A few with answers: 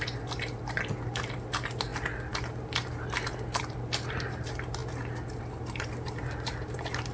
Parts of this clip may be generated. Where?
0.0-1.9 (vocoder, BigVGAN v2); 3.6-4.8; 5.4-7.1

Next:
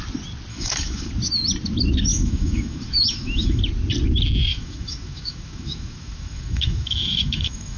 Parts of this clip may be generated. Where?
0.5-1.1 (autoencoder, DAC-VAE); 2.1-3.6; 4.5-7.8

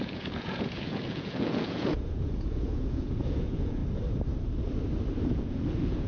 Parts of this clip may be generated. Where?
0.0-3.8 (vocoder, Vocos); 5.3-6.1

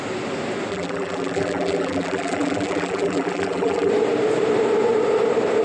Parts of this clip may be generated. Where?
0.7-3.9 (vocoder, BigVGAN v2)

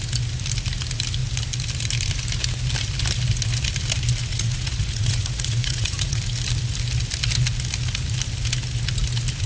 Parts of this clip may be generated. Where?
4.3-6.2 (vocoder, Vocos)

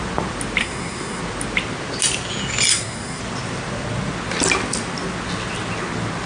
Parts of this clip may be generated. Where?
0.6-1.2 (codec, SNAC); 2.7-3.2

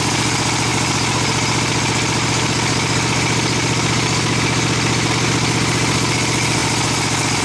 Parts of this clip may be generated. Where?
none